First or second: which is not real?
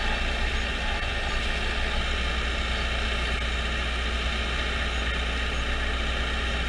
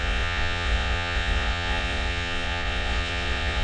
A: second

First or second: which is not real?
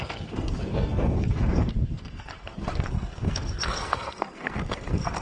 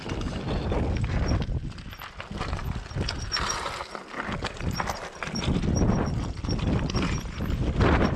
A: first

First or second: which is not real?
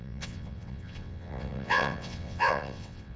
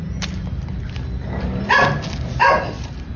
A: first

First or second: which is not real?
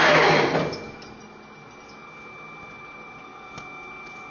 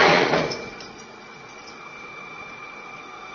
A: second